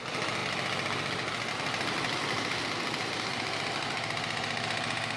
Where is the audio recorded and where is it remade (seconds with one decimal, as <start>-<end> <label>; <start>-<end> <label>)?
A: 0.0-5.2 recorded